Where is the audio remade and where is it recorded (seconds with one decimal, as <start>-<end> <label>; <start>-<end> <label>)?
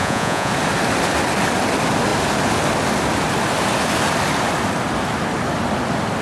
0.0-0.5 remade; 0.5-6.2 recorded